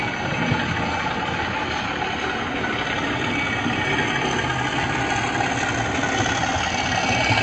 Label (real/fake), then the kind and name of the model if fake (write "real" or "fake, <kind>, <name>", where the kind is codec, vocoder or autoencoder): real